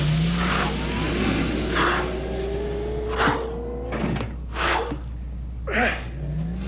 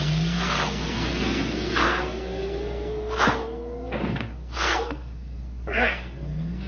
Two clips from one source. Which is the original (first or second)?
first